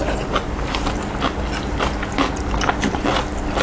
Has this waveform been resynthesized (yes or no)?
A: no